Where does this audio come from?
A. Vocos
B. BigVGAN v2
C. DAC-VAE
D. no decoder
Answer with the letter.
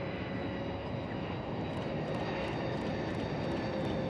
D